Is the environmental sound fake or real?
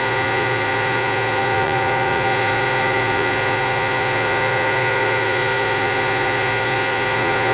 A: fake